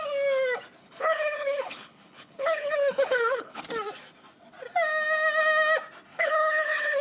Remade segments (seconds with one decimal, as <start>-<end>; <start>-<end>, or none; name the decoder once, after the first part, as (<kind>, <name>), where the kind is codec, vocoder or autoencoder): 0.8-3.6 (codec, HILCodec); 6.1-7.0